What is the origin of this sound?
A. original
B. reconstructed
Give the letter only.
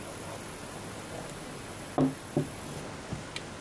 A